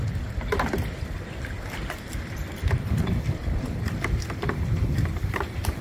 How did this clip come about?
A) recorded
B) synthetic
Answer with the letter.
B